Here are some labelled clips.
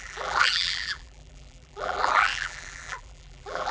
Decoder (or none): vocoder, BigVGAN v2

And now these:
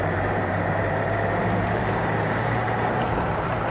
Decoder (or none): vocoder, BigVGAN v2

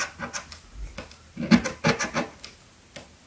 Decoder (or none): none